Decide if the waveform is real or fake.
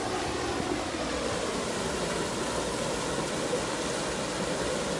real